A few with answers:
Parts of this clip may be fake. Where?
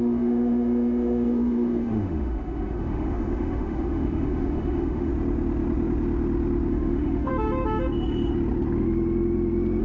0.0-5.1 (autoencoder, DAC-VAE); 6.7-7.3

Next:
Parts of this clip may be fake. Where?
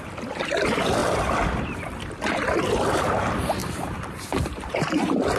0.0-5.4 (vocoder, BigVGAN v2)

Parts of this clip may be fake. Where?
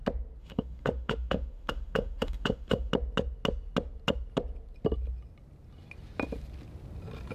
0.4-2.9 (autoencoder, DAC-VAE)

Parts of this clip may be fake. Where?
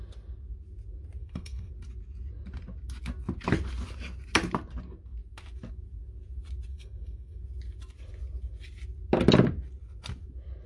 1.2-1.7 (codec, SNAC); 6.7-7.4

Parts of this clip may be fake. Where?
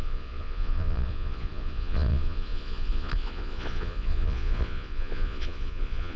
0.0-6.2 (vocoder, Vocos)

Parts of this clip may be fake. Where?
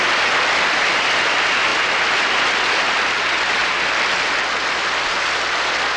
1.7-2.7 (vocoder, BigVGAN v2)